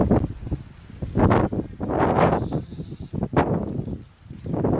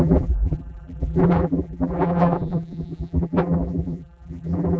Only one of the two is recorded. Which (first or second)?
first